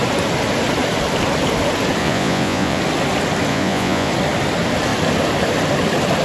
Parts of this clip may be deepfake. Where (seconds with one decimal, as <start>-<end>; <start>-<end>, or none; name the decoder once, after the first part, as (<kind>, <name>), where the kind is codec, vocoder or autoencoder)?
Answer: 2.0-2.8 (vocoder, Vocos); 3.5-4.1